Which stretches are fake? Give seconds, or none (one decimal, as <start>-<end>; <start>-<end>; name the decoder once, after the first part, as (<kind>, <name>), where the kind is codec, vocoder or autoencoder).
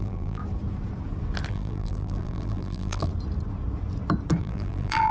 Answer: 0.0-0.4 (vocoder, BigVGAN v2); 1.5-3.1; 4.4-5.1